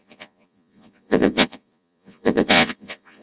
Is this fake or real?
fake